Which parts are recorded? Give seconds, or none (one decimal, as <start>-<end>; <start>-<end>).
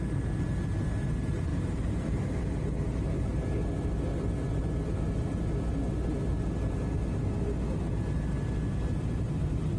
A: 0.0-1.5; 2.4-9.8